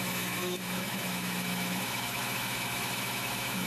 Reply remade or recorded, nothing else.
remade